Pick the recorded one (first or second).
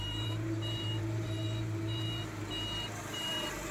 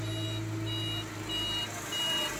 second